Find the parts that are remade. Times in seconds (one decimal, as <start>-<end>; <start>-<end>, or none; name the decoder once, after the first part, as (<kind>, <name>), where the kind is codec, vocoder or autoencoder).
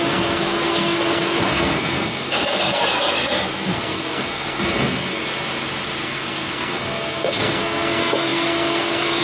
0.0-5.2 (codec, SNAC); 6.0-9.2